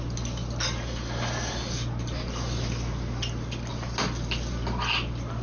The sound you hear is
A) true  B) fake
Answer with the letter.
A